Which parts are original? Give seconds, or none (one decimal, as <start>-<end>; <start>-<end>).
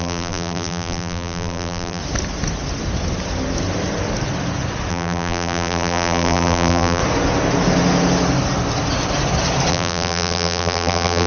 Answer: 2.0-4.9; 7.0-9.7